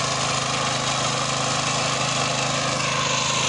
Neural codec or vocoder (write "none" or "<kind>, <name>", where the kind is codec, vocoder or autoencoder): none